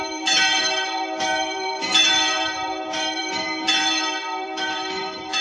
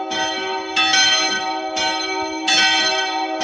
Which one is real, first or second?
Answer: second